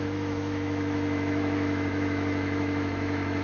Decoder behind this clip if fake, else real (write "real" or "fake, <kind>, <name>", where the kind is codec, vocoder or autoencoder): fake, autoencoder, DAC-VAE